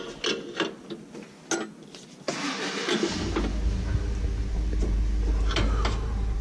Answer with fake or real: real